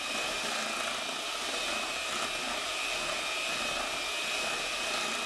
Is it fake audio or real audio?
real